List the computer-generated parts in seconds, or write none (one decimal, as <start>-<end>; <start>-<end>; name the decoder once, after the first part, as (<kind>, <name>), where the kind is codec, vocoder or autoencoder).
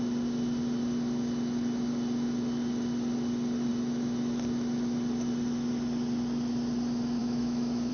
7.2-7.9 (autoencoder, DAC-VAE)